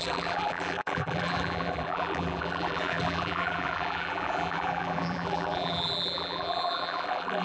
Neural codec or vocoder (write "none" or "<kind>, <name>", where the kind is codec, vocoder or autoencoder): vocoder, BigVGAN v2